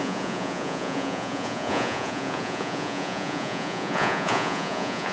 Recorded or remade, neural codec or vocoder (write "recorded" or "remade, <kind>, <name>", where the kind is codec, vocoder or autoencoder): remade, vocoder, Vocos